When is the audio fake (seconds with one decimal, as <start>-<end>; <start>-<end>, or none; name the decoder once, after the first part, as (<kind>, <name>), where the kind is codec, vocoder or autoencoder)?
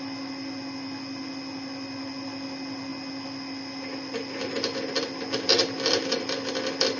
none